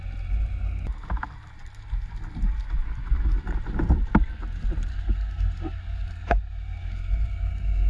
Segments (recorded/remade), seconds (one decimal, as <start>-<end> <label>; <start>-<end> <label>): 0.0-4.9 recorded; 4.9-7.9 remade